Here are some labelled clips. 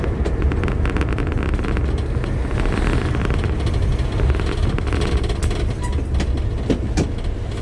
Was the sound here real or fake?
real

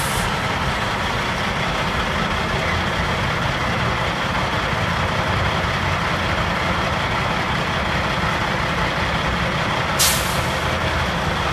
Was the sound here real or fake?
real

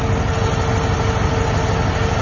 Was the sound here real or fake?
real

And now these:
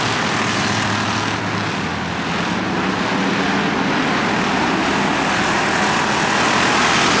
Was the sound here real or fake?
real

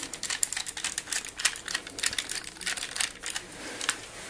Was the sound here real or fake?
real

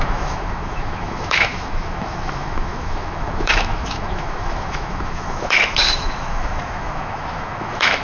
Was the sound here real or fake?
fake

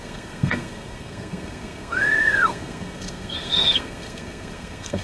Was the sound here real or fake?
fake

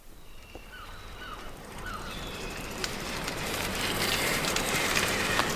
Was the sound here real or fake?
fake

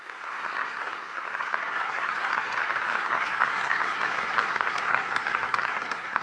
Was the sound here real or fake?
fake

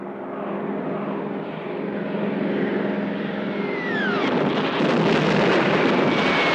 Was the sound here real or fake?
real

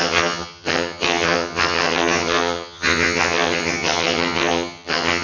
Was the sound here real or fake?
fake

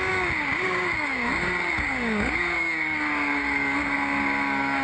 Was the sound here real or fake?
fake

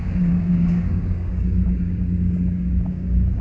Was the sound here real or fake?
fake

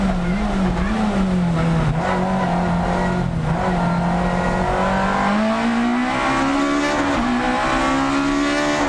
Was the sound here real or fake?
real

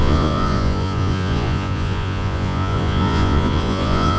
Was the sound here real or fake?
fake